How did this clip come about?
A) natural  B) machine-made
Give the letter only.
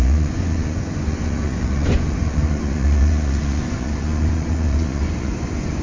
B